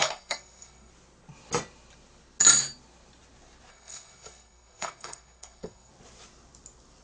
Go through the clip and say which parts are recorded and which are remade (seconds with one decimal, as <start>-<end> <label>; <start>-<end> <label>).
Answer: 0.0-0.9 remade; 0.9-3.7 recorded; 3.7-5.9 remade; 5.9-7.0 recorded